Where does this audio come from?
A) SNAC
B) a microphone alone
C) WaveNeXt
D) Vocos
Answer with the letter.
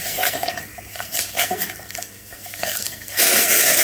A